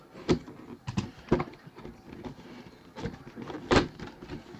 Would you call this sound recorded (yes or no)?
yes